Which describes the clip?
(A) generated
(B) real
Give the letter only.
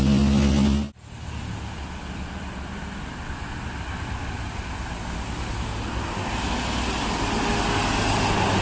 B